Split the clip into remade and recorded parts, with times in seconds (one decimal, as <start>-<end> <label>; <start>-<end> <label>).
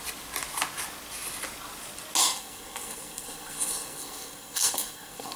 0.0-2.2 recorded; 2.2-5.4 remade